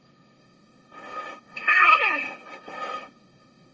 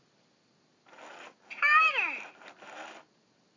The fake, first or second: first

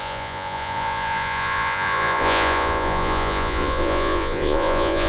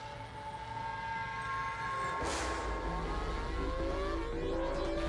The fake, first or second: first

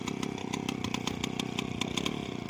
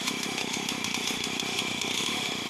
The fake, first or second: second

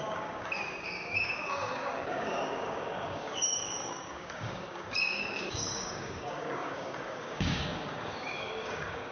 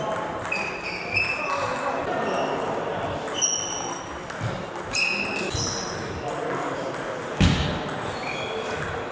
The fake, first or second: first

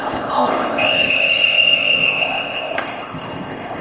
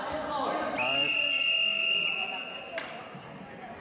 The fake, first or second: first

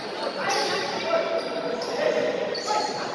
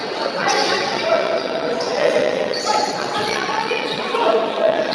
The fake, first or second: second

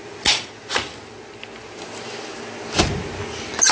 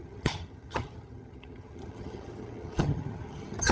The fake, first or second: second